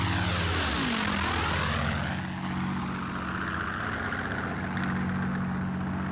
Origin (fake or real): real